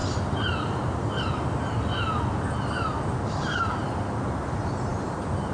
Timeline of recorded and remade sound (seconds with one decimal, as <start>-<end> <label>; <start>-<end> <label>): 0.0-5.5 recorded